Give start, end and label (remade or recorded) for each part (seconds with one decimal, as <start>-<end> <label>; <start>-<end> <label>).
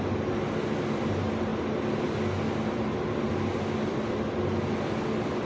0.0-5.4 recorded